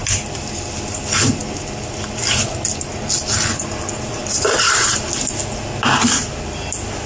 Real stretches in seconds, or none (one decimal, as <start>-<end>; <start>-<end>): 0.0-7.1